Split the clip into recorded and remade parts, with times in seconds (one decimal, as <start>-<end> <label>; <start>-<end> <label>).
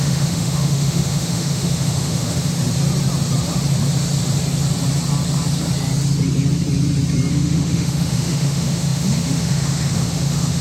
0.0-2.5 remade; 2.5-7.3 recorded; 7.3-10.6 remade